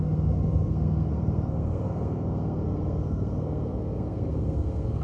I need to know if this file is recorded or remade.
remade